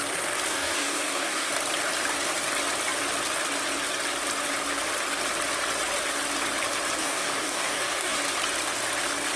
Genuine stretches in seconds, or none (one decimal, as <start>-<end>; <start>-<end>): 0.0-0.5; 1.5-7.0; 8.2-9.4